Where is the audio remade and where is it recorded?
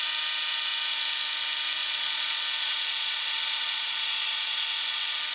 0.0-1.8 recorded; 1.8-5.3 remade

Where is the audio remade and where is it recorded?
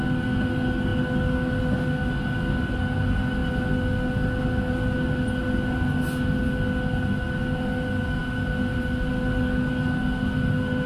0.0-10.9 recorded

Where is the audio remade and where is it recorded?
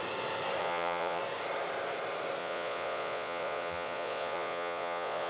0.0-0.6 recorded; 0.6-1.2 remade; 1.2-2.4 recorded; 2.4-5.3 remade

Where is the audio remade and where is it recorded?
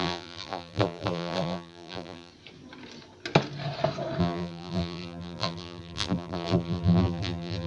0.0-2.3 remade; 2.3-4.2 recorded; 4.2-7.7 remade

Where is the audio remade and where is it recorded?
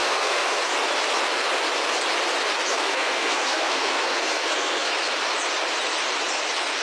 0.0-0.6 remade; 0.6-2.7 recorded; 2.7-4.9 remade; 4.9-6.8 recorded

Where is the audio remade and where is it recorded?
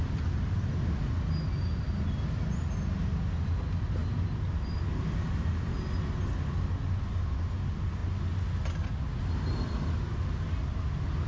0.0-11.3 recorded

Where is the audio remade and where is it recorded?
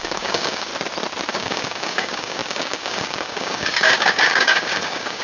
0.0-0.7 remade; 0.7-1.3 recorded; 1.3-5.2 remade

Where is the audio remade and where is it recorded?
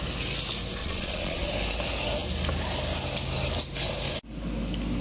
0.0-0.8 recorded; 0.8-1.5 remade; 1.5-5.0 recorded